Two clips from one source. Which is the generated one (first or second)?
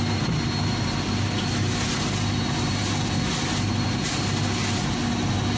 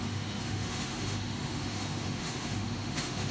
second